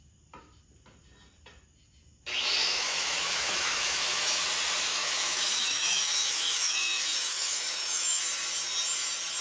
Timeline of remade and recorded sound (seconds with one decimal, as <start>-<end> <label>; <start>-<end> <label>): 0.0-2.6 recorded; 2.6-4.4 remade; 4.4-4.9 recorded; 4.9-8.2 remade; 8.2-9.4 recorded